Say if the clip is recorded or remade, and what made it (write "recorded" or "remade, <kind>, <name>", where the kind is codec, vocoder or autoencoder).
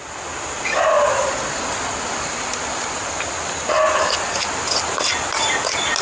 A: recorded